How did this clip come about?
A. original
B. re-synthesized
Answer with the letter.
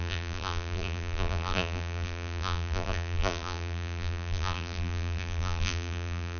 B